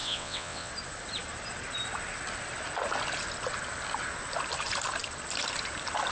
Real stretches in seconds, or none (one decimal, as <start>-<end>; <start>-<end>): 0.7-6.1